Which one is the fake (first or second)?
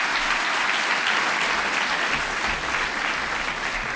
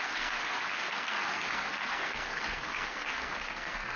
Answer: second